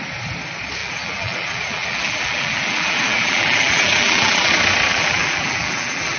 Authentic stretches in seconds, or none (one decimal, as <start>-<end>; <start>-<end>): 0.0-0.8; 4.5-4.9